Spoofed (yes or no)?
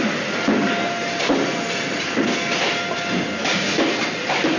no